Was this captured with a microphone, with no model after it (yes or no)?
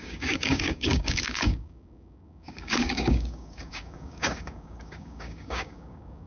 no